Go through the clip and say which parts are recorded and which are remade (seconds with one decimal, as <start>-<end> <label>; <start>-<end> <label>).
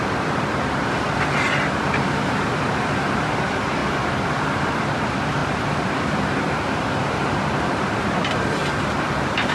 0.0-8.6 remade; 8.6-9.5 recorded